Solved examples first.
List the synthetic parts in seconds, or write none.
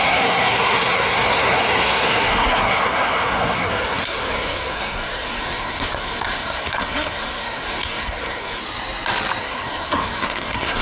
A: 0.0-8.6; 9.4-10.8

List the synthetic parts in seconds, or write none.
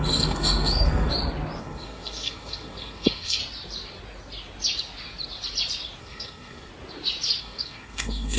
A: 0.0-1.1; 1.6-3.4; 6.0-6.7; 7.4-8.4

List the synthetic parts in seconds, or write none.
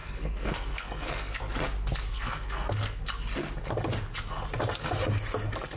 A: 0.0-1.4; 2.1-3.0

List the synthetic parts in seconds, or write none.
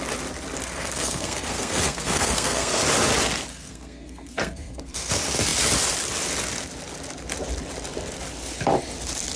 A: 0.6-2.8; 3.5-5.1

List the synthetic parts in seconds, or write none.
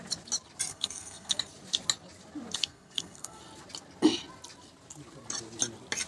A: 0.7-1.4; 2.6-3.4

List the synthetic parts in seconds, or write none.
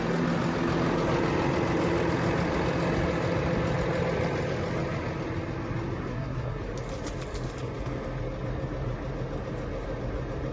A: 6.1-6.6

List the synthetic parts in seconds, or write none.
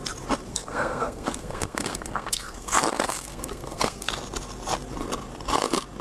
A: 0.5-4.1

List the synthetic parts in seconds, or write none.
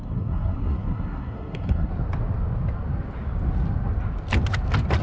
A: 0.0-1.9